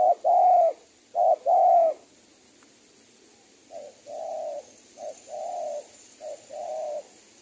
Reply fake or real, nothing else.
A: real